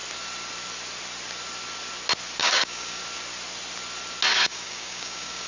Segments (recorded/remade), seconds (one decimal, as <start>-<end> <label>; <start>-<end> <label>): 0.0-2.4 recorded; 2.4-3.0 remade; 3.0-4.3 recorded; 4.3-5.5 remade